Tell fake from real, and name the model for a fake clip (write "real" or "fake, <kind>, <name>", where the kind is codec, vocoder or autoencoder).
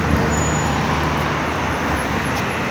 real